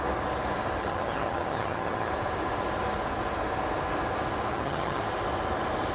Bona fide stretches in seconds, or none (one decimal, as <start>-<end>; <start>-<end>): 0.0-0.8; 2.1-4.5; 5.0-5.9